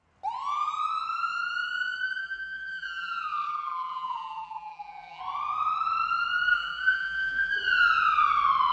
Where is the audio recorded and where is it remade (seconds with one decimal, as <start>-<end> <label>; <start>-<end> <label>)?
0.0-2.2 recorded; 2.2-5.2 remade; 5.2-6.5 recorded; 6.5-7.5 remade; 7.5-8.7 recorded